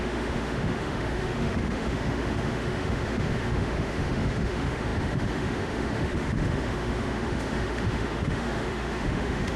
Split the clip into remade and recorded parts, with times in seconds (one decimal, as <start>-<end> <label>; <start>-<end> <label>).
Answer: 0.0-9.6 remade